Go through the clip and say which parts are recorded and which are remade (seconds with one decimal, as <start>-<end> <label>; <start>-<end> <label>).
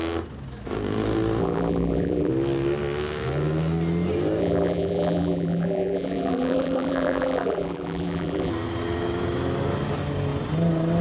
0.0-1.4 recorded; 1.4-2.3 remade; 2.3-4.4 recorded; 4.4-8.5 remade; 8.5-11.0 recorded